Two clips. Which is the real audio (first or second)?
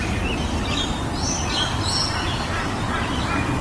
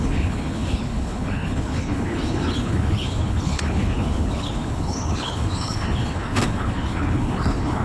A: first